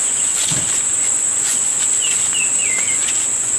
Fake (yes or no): yes